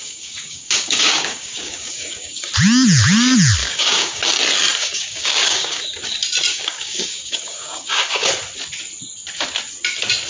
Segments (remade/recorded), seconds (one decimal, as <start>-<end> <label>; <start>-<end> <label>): 0.0-2.5 remade; 2.5-3.6 recorded; 3.6-4.2 remade; 4.2-4.8 recorded; 4.8-5.8 remade; 5.8-6.5 recorded; 6.5-8.3 remade; 8.3-10.3 recorded